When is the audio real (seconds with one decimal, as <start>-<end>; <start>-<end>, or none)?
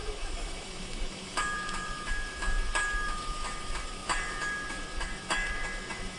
none